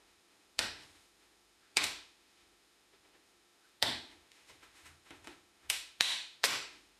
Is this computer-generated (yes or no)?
yes